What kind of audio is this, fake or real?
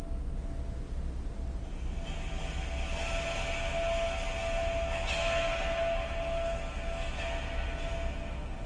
real